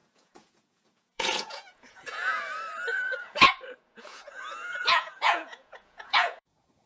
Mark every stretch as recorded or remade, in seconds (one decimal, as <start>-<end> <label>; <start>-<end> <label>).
0.0-2.4 remade; 2.4-2.9 recorded; 2.9-6.9 remade